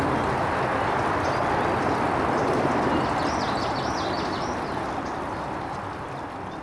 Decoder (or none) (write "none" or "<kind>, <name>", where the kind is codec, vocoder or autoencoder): none